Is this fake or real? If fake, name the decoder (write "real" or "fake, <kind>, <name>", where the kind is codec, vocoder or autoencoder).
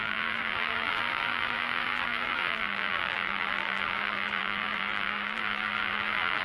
fake, vocoder, BigVGAN v2